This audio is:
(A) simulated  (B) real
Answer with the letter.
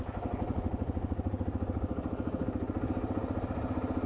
B